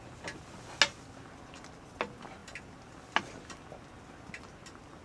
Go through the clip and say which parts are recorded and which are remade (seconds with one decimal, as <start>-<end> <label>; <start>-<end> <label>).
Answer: 0.0-5.0 recorded